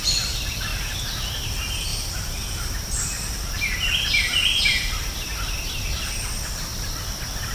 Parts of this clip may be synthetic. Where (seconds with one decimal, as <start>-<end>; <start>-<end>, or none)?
0.0-0.7; 1.3-7.5